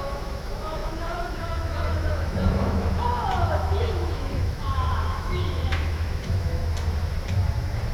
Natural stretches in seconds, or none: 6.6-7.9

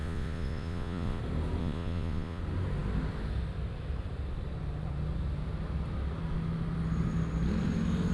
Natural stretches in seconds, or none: 1.2-1.6; 2.4-8.1

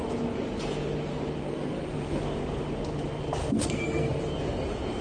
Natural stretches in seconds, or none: 0.0-1.4; 2.2-3.4; 4.2-5.0

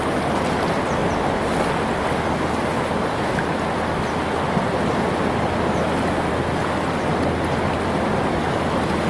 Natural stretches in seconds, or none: 0.0-9.1

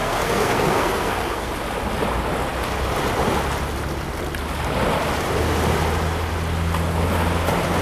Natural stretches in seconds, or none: 1.5-7.8